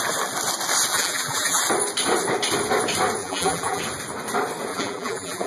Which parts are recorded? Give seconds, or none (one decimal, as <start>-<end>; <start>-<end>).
0.0-0.9; 1.6-3.2; 3.8-4.7